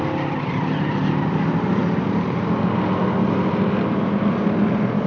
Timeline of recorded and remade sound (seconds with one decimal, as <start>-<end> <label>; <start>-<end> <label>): 0.0-5.1 recorded